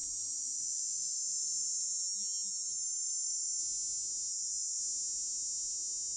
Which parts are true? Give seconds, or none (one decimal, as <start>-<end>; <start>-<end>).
3.6-4.3; 4.8-6.2